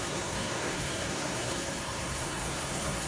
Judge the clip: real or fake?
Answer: fake